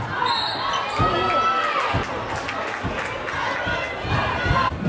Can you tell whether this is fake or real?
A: real